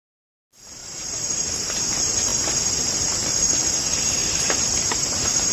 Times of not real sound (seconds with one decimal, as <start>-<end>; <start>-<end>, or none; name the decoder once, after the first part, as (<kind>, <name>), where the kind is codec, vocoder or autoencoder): 0.8-1.8 (vocoder, BigVGAN v2)